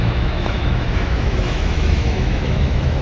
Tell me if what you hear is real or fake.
fake